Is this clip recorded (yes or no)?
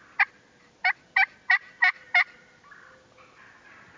yes